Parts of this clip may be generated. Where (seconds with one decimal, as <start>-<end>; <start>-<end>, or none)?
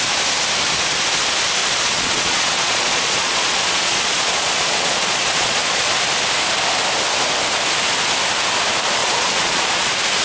1.6-5.9; 9.0-9.7